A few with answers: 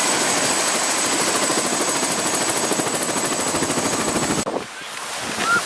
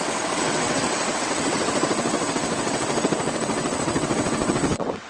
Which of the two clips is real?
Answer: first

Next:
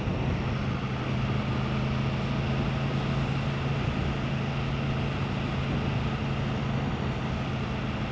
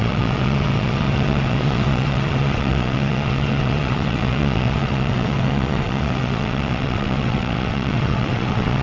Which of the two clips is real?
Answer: first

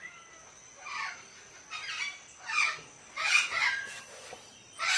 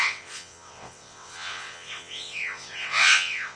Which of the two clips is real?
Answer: first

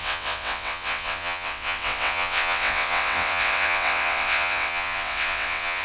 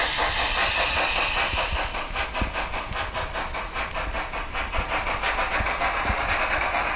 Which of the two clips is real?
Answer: second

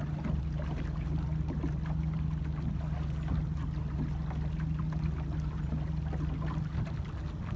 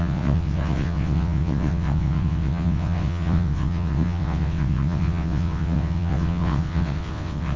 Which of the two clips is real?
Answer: first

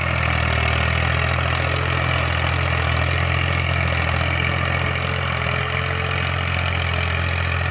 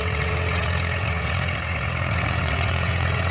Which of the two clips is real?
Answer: first